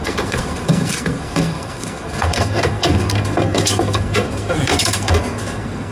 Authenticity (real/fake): fake